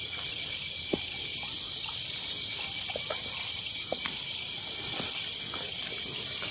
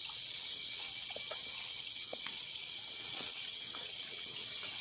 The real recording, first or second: first